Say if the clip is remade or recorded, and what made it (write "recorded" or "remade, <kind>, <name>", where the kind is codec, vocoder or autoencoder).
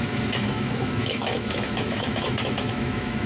remade, autoencoder, DAC-VAE